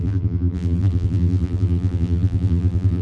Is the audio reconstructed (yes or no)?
yes